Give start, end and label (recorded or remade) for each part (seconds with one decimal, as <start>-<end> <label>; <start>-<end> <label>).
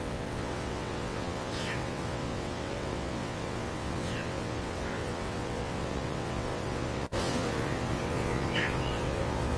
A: 0.0-9.6 remade